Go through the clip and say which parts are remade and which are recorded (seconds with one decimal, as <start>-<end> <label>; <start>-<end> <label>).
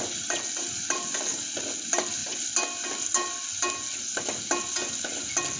0.0-5.6 recorded